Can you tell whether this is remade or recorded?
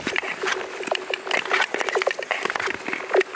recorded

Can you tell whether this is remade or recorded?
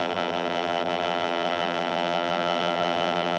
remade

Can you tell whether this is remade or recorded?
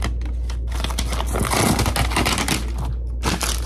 recorded